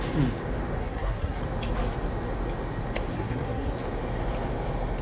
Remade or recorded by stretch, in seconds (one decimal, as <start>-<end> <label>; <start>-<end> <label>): 0.0-0.8 recorded; 0.8-1.4 remade; 1.4-3.1 recorded; 3.1-3.7 remade; 3.7-5.0 recorded

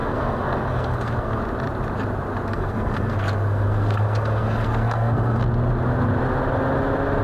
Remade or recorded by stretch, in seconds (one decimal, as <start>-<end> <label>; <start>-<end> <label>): 0.0-1.4 remade; 1.4-2.5 recorded; 2.5-5.4 remade; 5.4-7.2 recorded

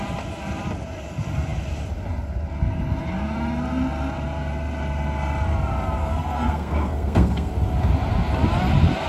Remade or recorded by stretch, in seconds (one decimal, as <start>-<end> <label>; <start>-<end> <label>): 0.0-6.0 recorded; 6.0-7.5 remade; 7.5-9.1 recorded

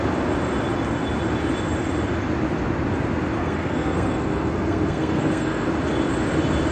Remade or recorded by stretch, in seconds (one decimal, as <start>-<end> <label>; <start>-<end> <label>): 0.0-3.4 recorded; 3.4-5.7 remade; 5.7-6.7 recorded

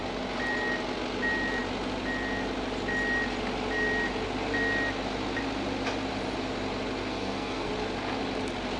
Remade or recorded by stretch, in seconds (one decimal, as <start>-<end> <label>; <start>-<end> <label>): 0.0-7.1 recorded; 7.1-7.7 remade; 7.7-8.8 recorded

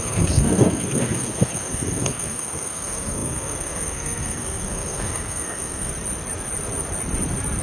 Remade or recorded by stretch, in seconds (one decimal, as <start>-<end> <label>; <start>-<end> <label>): 0.0-5.9 remade; 5.9-7.6 recorded

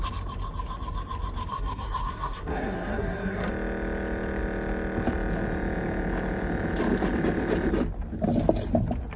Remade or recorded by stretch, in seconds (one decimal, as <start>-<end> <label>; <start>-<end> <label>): 0.0-1.5 recorded; 1.5-3.5 remade; 3.5-9.2 recorded

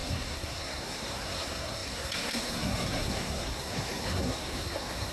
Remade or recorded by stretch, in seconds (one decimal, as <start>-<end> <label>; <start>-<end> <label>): 0.0-5.1 remade